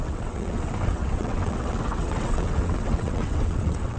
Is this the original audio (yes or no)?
no